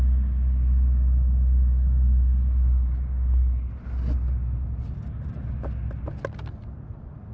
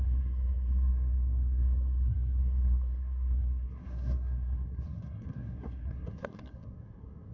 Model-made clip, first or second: second